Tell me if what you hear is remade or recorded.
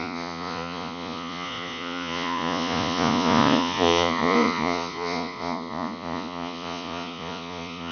remade